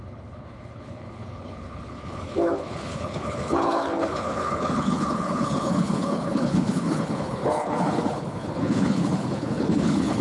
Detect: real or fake fake